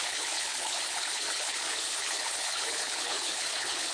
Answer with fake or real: fake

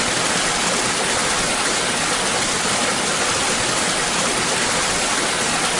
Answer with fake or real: real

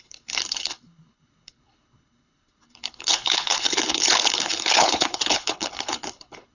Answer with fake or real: fake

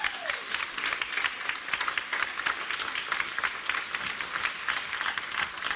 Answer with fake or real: real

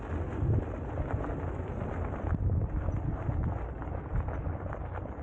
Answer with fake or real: real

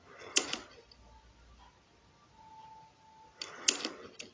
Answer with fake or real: real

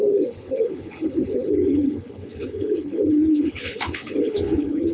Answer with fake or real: fake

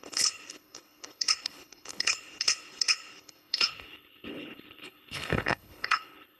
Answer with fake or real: fake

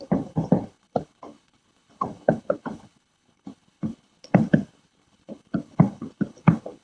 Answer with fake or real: fake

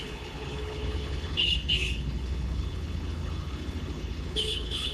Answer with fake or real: fake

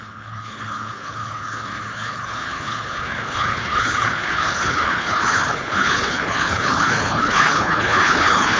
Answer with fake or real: fake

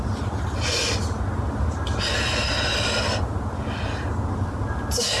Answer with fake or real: real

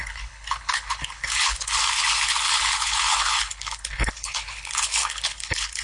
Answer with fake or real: fake